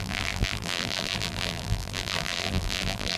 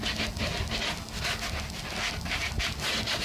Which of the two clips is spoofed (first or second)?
first